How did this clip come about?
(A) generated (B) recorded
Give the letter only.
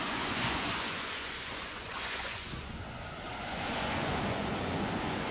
A